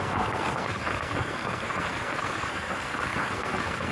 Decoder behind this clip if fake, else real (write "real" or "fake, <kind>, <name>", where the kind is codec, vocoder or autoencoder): fake, codec, SNAC